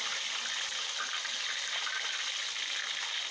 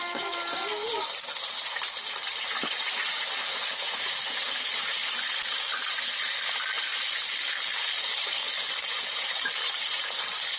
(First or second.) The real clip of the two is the first